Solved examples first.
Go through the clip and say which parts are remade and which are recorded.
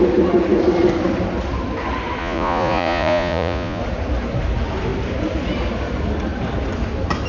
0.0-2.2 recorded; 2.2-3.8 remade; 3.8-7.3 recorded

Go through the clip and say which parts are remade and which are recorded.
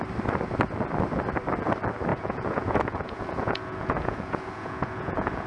0.0-2.1 recorded; 2.1-5.5 remade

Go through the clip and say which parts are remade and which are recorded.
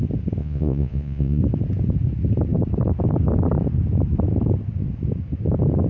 0.0-0.4 recorded; 0.4-1.4 remade; 1.4-5.9 recorded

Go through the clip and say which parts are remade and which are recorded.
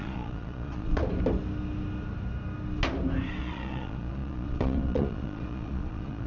0.0-1.0 remade; 1.0-3.4 recorded; 3.4-6.3 remade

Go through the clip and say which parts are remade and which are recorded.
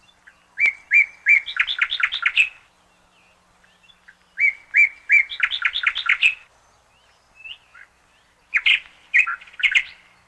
0.0-10.3 recorded